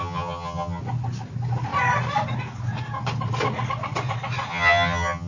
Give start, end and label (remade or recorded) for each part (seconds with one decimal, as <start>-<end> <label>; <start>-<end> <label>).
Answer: 0.0-0.8 remade; 0.8-4.5 recorded; 4.5-5.3 remade